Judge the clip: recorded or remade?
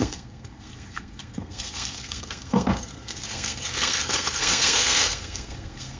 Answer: remade